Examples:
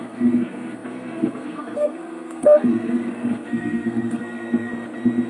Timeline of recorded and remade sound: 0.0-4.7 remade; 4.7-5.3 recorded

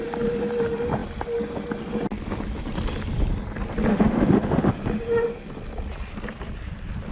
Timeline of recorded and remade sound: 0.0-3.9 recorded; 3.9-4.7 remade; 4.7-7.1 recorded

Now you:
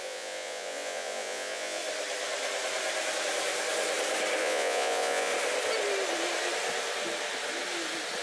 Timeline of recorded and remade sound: 0.0-1.8 remade; 1.8-4.4 recorded; 4.4-5.3 remade; 5.3-8.2 recorded